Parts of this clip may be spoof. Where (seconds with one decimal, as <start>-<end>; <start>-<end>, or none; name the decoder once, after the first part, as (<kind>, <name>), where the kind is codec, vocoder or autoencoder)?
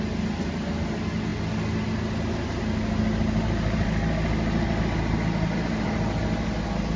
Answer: none